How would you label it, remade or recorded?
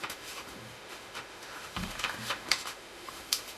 remade